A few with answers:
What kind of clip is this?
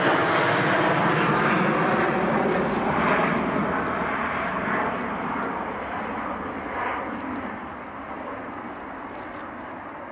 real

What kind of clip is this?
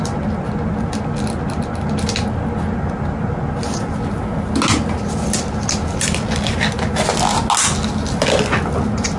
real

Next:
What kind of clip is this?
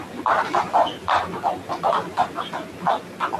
fake